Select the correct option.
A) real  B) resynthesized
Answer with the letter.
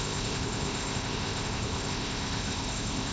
B